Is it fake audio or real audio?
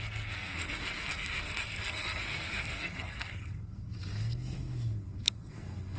fake